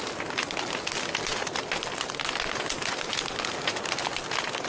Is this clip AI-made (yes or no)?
no